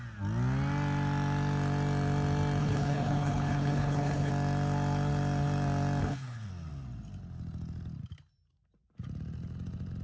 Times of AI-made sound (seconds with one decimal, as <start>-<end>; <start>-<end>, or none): 2.6-4.3; 6.0-6.5